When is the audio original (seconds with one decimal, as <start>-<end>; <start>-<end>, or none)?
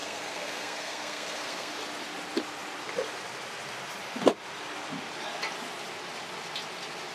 1.7-7.1